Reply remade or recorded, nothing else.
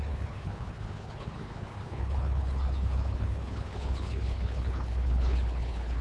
remade